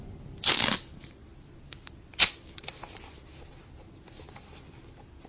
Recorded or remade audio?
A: recorded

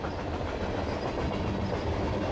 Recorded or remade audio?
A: recorded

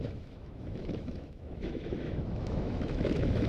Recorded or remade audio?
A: remade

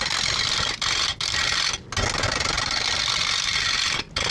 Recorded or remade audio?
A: recorded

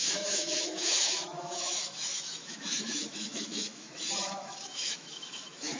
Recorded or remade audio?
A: remade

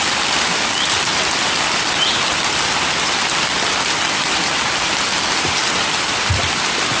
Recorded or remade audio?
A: recorded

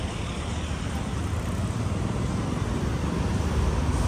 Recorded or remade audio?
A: recorded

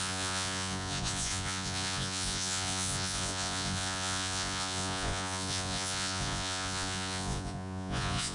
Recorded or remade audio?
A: remade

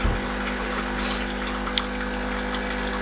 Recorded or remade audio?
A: recorded